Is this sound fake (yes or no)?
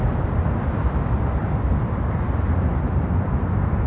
yes